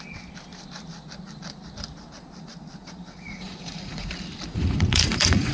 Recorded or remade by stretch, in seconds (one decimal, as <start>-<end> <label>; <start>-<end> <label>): 0.0-2.8 recorded; 2.8-4.1 remade; 4.1-4.5 recorded; 4.5-5.5 remade